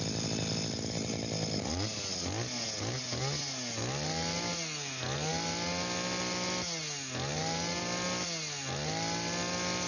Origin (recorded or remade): recorded